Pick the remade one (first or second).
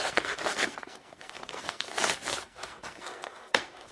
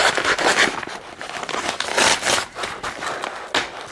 first